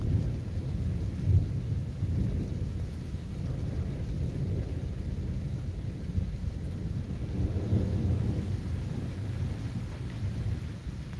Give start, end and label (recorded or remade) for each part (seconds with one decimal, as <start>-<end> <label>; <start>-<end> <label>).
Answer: 0.0-7.7 recorded; 7.7-9.4 remade; 9.4-11.2 recorded